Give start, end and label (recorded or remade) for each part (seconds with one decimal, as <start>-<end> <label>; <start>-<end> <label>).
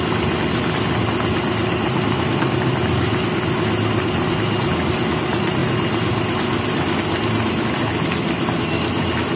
0.0-9.4 recorded